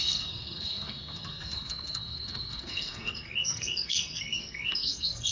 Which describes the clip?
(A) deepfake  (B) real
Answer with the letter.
A